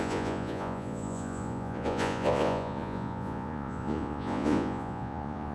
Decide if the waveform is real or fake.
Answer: fake